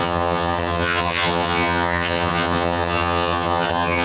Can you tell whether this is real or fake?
fake